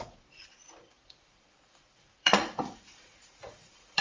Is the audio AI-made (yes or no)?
yes